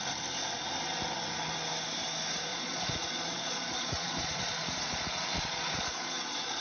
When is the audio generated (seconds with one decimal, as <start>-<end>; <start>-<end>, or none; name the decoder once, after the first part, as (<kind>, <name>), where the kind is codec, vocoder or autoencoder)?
2.5-6.6 (vocoder, Vocos)